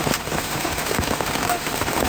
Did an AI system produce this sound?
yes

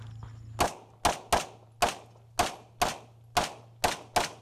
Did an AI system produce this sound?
no